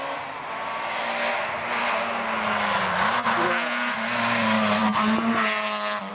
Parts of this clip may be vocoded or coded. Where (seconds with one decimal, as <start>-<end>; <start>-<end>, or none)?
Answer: none

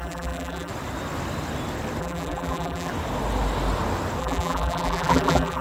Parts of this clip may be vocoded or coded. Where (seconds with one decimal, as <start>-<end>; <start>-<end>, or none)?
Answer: 0.0-0.7; 2.0-2.9; 4.2-5.6

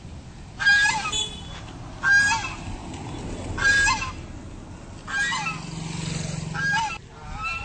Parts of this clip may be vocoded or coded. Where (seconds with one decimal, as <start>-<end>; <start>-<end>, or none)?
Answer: none

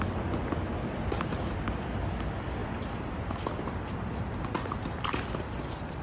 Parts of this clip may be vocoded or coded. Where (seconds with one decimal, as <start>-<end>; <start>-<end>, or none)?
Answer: none